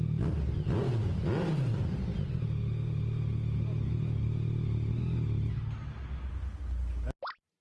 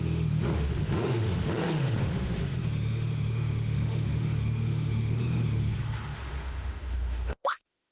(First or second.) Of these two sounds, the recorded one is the first